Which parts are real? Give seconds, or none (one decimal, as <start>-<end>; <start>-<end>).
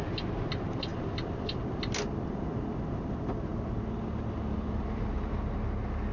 0.0-6.1